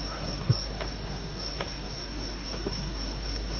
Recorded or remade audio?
remade